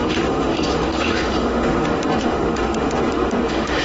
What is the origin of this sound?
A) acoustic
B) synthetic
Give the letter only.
B